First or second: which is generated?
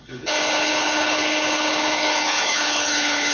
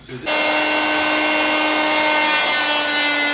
first